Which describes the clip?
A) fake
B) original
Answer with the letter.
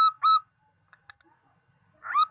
B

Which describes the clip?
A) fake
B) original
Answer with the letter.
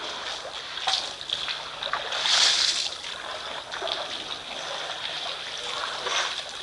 B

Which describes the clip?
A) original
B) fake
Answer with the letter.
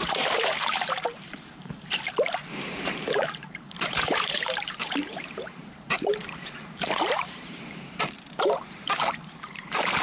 B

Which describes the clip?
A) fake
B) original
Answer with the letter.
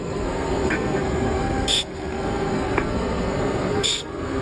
A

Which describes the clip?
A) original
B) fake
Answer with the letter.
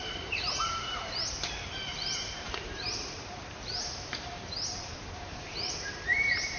B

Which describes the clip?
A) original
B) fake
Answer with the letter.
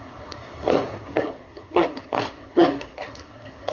B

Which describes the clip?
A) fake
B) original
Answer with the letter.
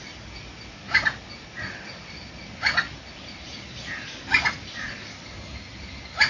B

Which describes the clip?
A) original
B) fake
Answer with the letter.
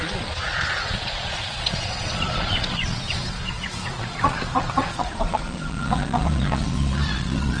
B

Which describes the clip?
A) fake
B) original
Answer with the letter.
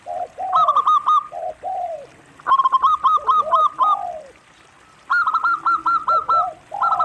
B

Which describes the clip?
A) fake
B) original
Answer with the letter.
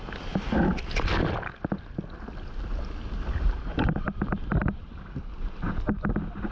B